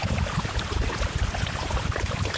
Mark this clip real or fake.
real